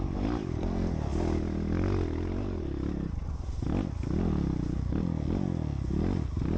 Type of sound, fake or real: real